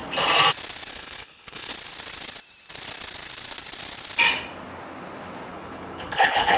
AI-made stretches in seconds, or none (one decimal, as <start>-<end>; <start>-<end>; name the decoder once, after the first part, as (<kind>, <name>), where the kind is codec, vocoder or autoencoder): 0.9-1.7 (codec, HILCodec); 5.5-6.6